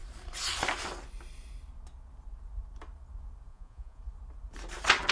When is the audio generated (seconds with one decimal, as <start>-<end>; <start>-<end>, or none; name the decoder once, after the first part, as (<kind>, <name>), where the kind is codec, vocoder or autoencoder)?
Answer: 3.5-4.0 (vocoder, Vocos)